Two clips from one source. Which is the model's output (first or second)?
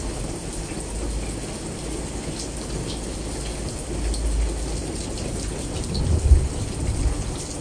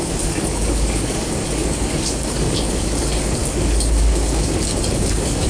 second